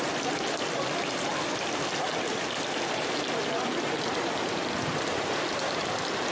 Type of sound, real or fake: real